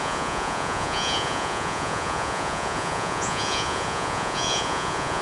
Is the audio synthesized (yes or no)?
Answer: yes